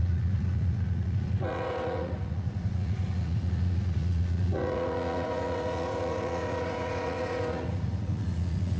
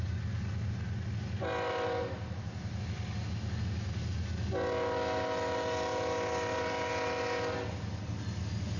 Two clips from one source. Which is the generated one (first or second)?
first